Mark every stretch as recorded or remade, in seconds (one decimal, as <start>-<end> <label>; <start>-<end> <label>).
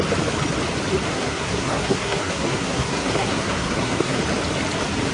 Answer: 0.0-1.1 recorded; 1.1-4.2 remade; 4.2-5.1 recorded